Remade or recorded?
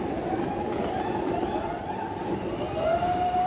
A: recorded